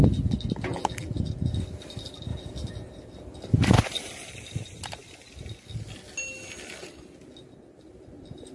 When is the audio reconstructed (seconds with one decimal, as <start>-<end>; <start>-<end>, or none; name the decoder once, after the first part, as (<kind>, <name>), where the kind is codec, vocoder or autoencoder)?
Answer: 0.7-1.2 (vocoder, BigVGAN v2)